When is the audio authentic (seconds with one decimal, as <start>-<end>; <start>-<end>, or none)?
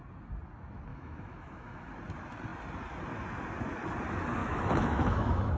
0.0-0.9; 1.9-4.4